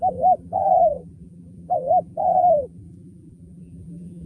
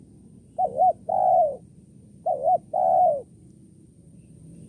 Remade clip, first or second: first